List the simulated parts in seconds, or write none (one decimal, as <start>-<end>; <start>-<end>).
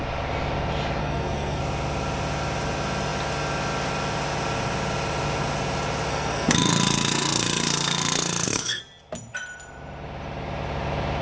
1.0-1.6; 6.1-8.8